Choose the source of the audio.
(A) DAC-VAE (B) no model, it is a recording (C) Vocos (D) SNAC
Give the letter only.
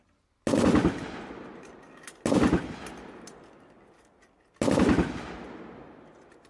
B